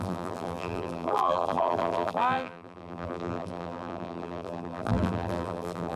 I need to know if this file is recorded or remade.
remade